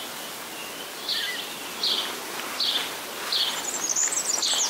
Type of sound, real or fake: real